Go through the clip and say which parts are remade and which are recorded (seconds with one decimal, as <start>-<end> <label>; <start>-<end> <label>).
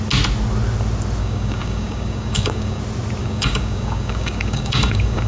0.0-1.2 recorded; 1.2-2.8 remade; 2.8-3.2 recorded; 3.2-5.3 remade